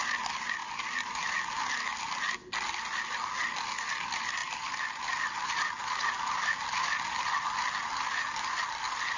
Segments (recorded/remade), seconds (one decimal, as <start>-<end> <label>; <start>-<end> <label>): 0.0-9.2 recorded